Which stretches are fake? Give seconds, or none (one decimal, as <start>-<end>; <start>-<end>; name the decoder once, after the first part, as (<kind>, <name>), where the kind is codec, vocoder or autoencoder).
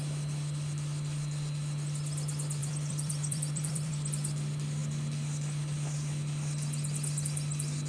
2.6-3.9 (vocoder, BigVGAN v2)